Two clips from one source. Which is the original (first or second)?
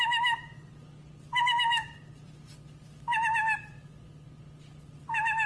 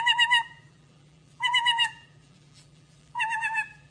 first